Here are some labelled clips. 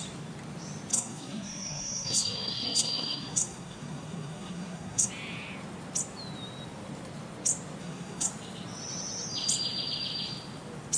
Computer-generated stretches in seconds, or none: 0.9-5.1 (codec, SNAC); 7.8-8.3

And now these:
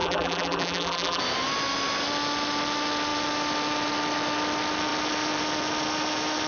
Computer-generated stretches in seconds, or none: 0.0-1.2 (vocoder, BigVGAN v2)

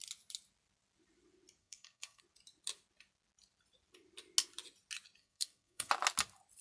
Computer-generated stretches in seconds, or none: 1.6-2.2 (codec, SNAC); 5.2-5.9

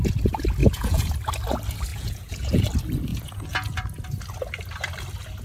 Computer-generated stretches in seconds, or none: 0.6-1.1 (vocoder, Vocos); 1.9-2.7; 3.1-3.8

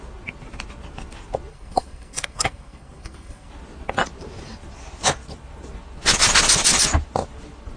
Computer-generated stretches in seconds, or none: 1.5-3.5 (codec, SNAC)

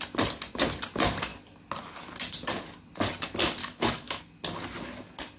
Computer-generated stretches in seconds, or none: 3.6-4.2 (autoencoder, DAC-VAE)

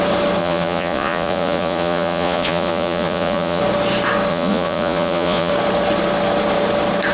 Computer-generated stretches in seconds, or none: 0.4-3.6 (vocoder, Vocos); 4.3-5.5